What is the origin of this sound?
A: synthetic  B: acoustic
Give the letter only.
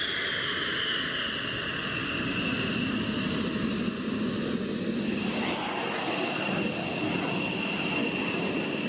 B